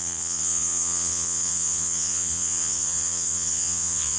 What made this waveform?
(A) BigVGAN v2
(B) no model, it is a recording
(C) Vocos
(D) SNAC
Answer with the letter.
C